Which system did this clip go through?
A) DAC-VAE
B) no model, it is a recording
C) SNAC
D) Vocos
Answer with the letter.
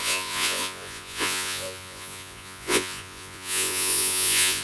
D